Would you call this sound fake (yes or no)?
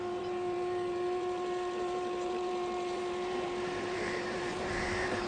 yes